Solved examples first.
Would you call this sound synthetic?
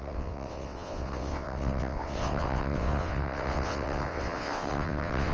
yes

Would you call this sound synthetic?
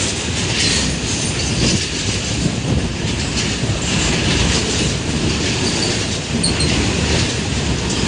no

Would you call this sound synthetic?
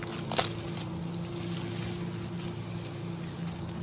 no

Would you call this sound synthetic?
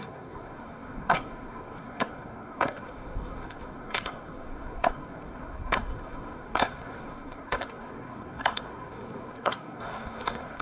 yes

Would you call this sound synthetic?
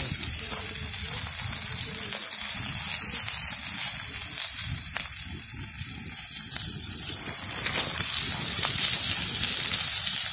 no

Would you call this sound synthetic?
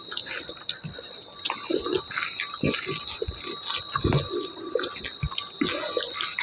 no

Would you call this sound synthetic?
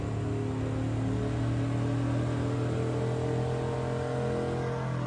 no